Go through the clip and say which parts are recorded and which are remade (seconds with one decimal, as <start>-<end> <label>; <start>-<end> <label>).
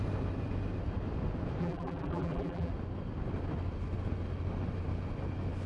0.0-1.6 recorded; 1.6-2.7 remade; 2.7-5.7 recorded